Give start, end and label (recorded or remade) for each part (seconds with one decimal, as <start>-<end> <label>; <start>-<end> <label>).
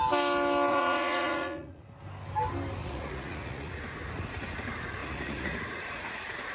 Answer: 0.0-0.7 recorded; 0.7-1.8 remade; 1.8-2.8 recorded; 2.8-3.8 remade; 3.8-5.0 recorded; 5.0-6.5 remade